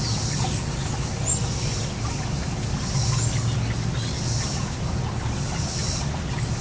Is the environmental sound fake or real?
real